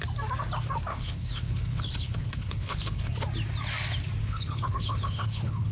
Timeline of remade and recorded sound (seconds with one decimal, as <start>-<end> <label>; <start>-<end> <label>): 0.0-0.9 recorded; 0.9-3.1 remade; 3.1-4.2 recorded; 4.2-5.7 remade